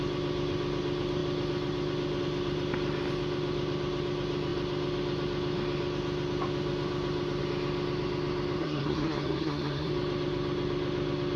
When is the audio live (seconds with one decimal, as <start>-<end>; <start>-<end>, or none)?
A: 0.0-8.6; 9.9-11.4